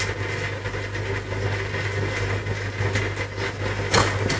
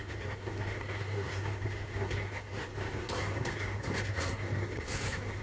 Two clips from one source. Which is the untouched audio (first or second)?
first